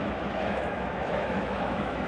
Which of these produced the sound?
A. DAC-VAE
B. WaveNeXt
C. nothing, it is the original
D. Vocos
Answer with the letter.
A